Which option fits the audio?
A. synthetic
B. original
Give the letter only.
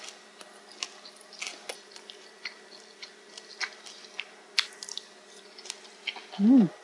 B